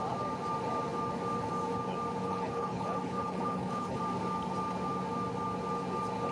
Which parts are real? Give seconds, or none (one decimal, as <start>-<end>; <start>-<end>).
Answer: 0.0-2.2; 4.0-6.3